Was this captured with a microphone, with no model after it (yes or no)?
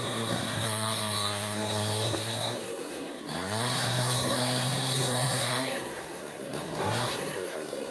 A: no